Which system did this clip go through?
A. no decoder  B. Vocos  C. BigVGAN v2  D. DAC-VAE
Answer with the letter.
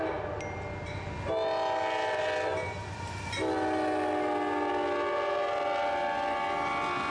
A